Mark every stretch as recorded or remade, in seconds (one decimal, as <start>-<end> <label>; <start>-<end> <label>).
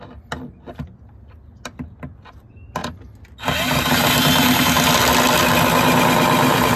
0.0-6.8 recorded